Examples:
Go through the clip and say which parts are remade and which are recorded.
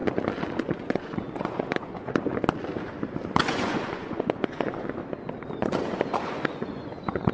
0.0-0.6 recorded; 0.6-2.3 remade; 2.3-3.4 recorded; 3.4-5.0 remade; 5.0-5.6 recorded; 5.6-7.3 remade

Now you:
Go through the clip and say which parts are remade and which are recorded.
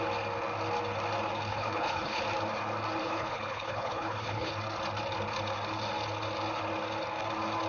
0.0-1.5 recorded; 1.5-2.2 remade; 2.2-3.0 recorded; 3.0-4.5 remade; 4.5-7.7 recorded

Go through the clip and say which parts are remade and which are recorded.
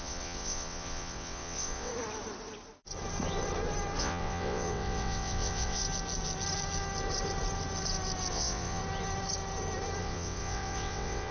0.0-1.9 remade; 1.9-4.0 recorded; 4.0-5.8 remade; 5.8-8.3 recorded; 8.3-8.8 remade; 8.8-10.0 recorded; 10.0-11.3 remade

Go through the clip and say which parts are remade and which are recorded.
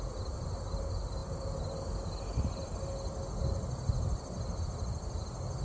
0.0-5.6 recorded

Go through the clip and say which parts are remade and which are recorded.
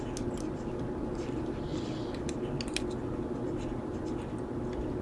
0.0-5.0 recorded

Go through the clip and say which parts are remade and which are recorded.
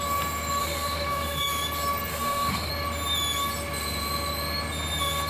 0.0-0.6 recorded; 0.6-1.5 remade; 1.5-2.1 recorded; 2.1-2.7 remade; 2.7-5.3 recorded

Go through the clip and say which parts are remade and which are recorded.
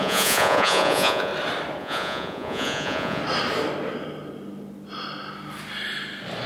0.0-1.3 remade; 1.3-1.8 recorded; 1.8-3.2 remade; 3.2-6.5 recorded